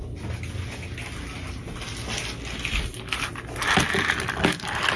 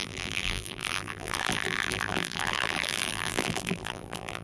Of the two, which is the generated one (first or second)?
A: second